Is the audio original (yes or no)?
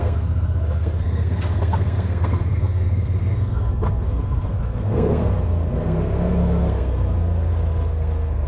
no